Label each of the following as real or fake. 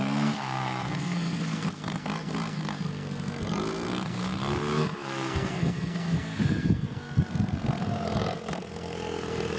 fake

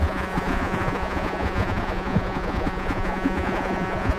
fake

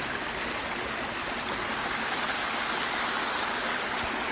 real